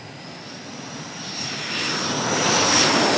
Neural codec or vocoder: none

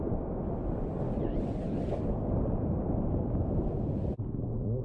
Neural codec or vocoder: none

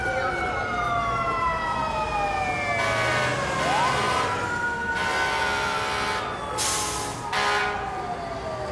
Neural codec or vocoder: none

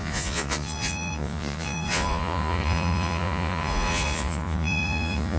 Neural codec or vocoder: vocoder, Vocos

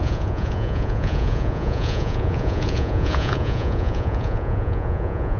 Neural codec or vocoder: vocoder, Vocos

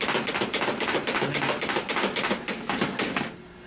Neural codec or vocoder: none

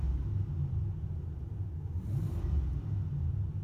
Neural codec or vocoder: none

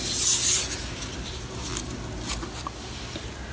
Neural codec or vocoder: none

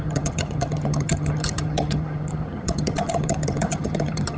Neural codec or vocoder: vocoder, HiFi-GAN